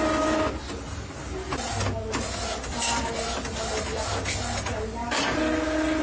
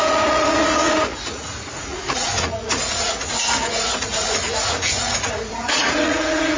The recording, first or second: first